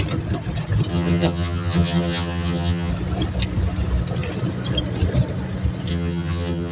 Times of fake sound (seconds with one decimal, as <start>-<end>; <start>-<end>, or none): 0.9-2.9; 5.9-6.7

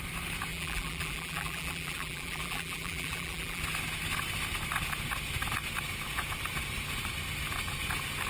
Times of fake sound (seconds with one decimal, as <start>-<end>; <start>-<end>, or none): 0.5-3.6

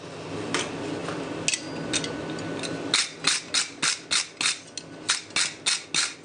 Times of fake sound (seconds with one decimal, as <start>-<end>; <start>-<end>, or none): none

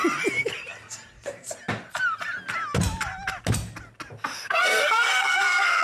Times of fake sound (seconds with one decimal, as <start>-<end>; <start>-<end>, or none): 4.4-5.8

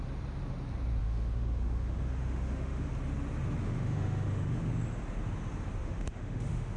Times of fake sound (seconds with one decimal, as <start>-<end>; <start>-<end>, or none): 1.0-2.9; 3.6-4.7; 5.8-6.8

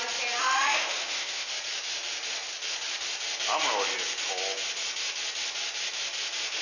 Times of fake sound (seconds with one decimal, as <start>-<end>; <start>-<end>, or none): 0.4-1.5

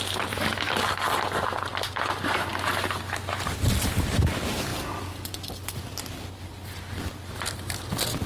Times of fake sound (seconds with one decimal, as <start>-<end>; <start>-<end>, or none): 4.7-5.5; 6.5-7.1